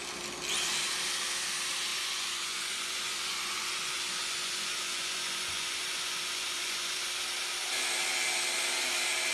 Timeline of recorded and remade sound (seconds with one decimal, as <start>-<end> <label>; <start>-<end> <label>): 0.0-1.9 recorded; 1.9-7.0 remade; 7.0-9.3 recorded